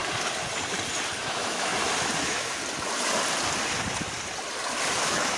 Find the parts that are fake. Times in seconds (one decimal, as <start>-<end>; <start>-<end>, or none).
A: 1.2-1.7; 2.2-2.6; 5.0-5.4